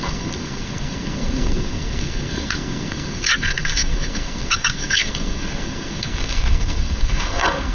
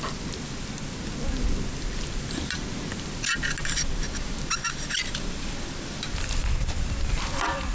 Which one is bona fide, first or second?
second